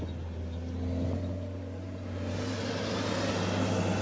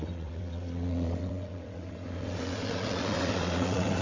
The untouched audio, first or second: first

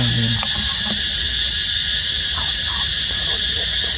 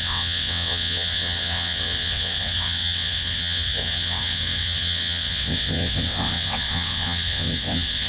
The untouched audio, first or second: first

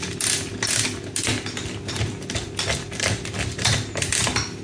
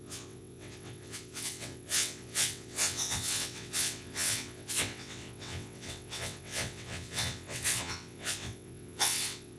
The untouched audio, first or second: first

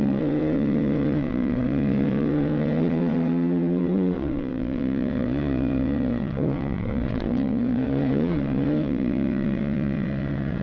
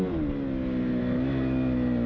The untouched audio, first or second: second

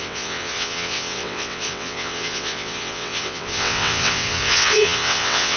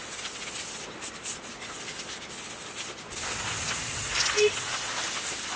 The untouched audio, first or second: second